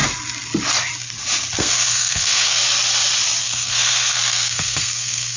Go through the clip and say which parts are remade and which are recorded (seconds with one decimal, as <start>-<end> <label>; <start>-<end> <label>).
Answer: 0.0-1.6 recorded; 1.6-2.6 remade; 2.6-3.4 recorded; 3.4-5.4 remade